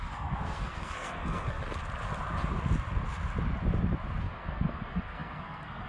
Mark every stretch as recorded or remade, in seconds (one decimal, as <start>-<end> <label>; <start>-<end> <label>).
0.0-1.6 remade; 1.6-4.2 recorded; 4.2-5.9 remade